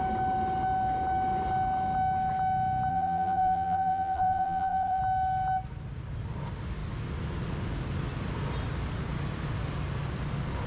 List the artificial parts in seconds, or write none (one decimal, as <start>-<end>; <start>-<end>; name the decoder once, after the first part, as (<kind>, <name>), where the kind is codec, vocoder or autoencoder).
2.9-5.0 (vocoder, BigVGAN v2)